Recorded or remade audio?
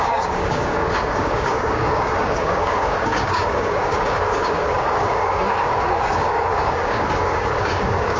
remade